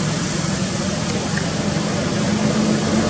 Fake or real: real